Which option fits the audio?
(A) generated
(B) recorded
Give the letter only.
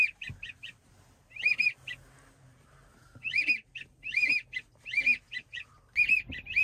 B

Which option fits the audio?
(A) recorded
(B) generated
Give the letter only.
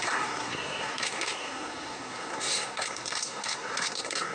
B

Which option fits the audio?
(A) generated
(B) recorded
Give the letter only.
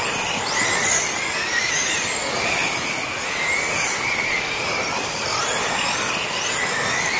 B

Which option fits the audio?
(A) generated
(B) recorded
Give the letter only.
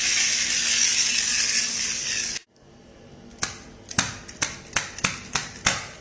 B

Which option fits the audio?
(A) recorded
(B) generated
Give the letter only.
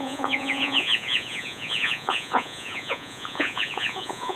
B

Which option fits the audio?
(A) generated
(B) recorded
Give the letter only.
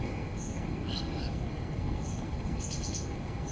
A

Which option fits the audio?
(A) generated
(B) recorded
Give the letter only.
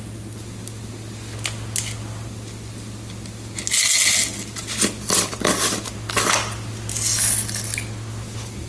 B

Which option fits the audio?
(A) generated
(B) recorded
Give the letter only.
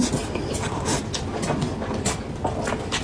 B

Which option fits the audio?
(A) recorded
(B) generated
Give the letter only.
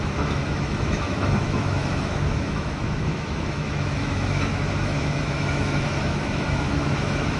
B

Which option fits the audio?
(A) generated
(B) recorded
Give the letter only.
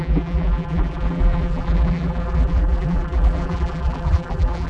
A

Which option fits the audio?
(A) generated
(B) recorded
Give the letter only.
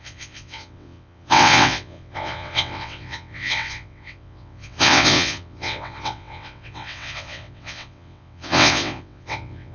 A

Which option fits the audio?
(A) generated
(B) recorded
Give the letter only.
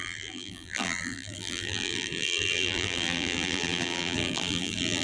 A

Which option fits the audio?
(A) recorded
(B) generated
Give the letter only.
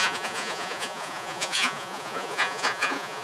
B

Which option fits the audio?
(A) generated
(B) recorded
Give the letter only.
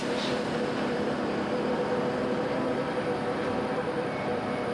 A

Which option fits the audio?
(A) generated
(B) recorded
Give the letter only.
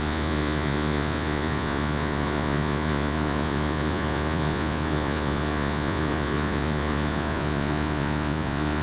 A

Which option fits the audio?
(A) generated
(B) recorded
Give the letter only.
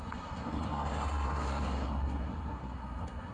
A